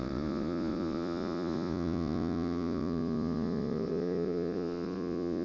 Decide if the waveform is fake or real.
fake